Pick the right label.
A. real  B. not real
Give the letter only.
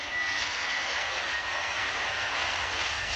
B